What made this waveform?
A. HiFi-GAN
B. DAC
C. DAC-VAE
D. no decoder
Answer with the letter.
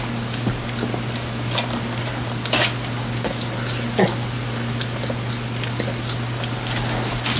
D